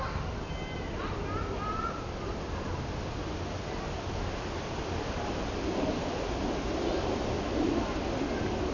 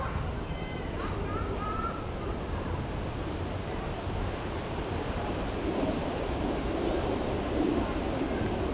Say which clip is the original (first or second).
first